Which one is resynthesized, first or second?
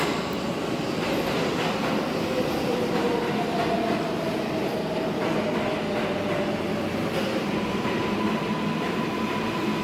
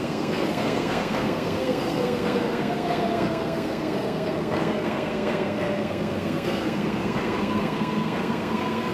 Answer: second